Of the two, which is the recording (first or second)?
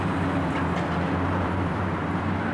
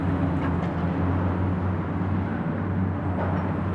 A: second